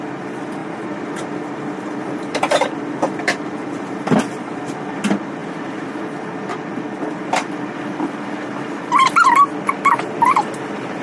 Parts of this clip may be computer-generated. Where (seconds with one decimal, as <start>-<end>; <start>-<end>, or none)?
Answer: 0.6-4.6; 5.4-5.9